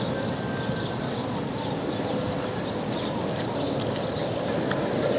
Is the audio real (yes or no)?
yes